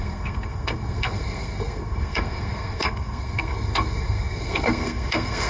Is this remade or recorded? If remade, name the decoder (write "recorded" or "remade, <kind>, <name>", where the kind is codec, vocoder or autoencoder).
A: remade, codec, SNAC